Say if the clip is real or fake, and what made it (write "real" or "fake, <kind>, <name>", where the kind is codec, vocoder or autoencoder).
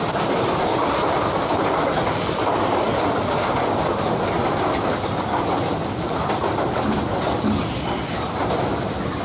real